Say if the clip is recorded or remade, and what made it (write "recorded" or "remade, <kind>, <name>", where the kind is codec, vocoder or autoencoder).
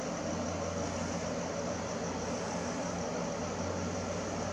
recorded